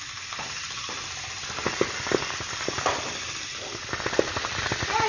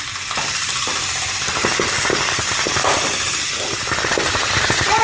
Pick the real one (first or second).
first